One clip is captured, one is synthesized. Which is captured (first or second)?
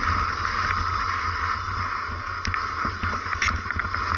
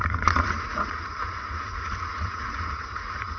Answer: first